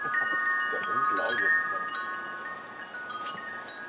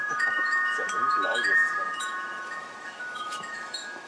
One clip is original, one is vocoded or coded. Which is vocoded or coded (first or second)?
second